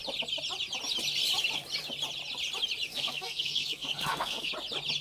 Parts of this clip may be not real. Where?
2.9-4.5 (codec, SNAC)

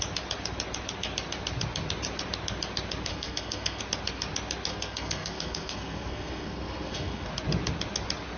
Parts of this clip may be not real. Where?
3.1-3.8 (codec, SNAC); 4.7-7.3